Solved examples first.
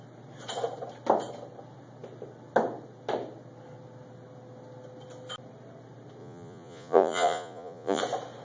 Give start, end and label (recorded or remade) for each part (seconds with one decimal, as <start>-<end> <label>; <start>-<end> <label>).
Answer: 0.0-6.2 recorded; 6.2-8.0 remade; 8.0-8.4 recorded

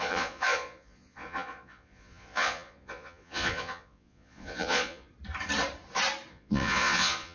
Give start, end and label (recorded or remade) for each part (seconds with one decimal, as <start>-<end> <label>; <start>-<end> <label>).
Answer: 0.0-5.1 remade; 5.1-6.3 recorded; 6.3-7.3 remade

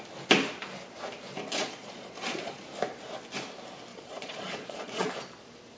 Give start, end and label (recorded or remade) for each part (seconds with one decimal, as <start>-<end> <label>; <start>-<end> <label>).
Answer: 0.0-1.5 recorded; 1.5-2.6 remade; 2.6-3.9 recorded; 3.9-5.1 remade; 5.1-5.8 recorded